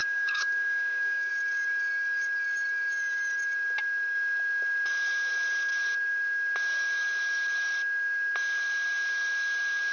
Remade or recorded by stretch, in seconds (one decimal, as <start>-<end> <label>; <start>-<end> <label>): 0.0-1.3 remade; 1.3-9.9 recorded